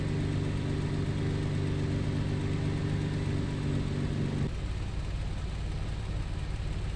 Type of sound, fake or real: real